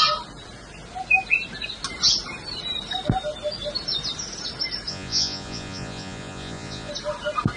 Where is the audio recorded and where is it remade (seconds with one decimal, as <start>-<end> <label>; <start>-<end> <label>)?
0.0-4.9 recorded; 4.9-6.9 remade; 6.9-7.6 recorded